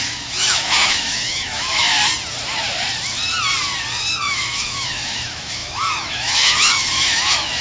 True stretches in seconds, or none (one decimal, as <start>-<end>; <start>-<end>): 1.9-4.1